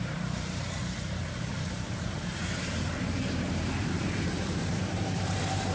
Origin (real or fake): fake